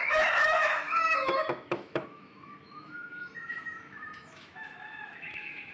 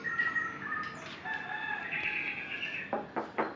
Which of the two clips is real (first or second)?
second